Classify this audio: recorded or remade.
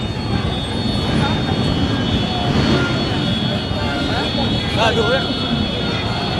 recorded